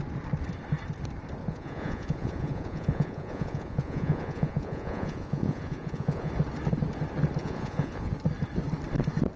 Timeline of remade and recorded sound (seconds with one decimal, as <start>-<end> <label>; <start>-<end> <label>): 0.0-1.4 recorded; 1.4-6.3 remade; 6.3-7.4 recorded; 7.4-8.1 remade; 8.1-9.4 recorded

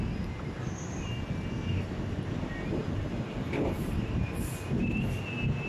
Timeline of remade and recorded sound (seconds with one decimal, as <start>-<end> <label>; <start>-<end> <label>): 0.0-2.8 recorded; 2.8-5.2 remade; 5.2-5.7 recorded

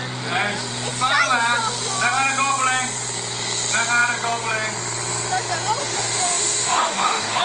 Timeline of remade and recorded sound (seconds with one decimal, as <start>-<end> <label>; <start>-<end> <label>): 0.0-5.8 recorded; 5.8-7.4 remade

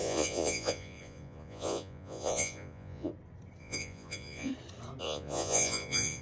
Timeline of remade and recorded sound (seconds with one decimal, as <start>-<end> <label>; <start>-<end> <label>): 0.0-3.1 remade; 3.1-3.6 recorded; 3.6-4.5 remade; 4.5-5.0 recorded; 5.0-6.2 remade

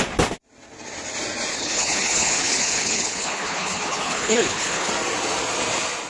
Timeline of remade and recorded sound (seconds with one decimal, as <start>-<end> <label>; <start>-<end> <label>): 0.0-1.5 recorded; 1.5-4.9 remade; 4.9-6.1 recorded